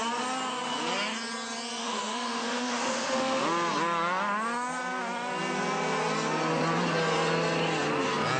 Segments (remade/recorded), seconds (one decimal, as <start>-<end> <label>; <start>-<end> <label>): 0.0-1.8 recorded; 1.8-3.4 remade; 3.4-8.4 recorded